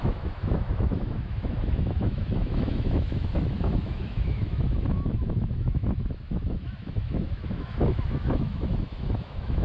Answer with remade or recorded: remade